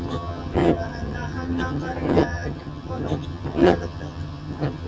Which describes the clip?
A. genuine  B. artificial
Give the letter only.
B